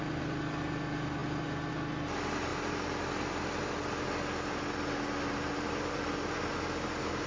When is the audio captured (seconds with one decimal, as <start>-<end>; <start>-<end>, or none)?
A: 0.0-7.3

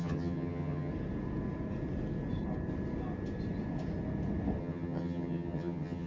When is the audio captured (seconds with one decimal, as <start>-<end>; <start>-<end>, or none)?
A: 0.9-4.6

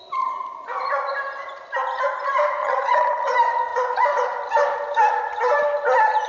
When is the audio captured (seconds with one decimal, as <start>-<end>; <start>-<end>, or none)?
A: 0.0-2.6; 3.3-6.3